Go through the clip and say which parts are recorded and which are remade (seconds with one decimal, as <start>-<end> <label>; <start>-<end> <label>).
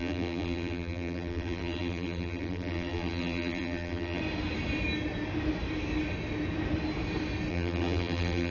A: 0.0-4.2 remade; 4.2-7.5 recorded; 7.5-8.5 remade